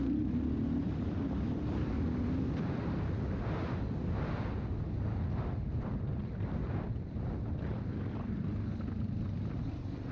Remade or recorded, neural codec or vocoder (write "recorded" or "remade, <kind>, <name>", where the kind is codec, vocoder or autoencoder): recorded